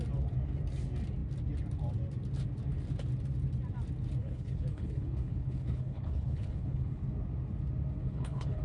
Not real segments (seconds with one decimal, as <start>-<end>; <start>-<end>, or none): 4.2-7.0; 8.0-8.6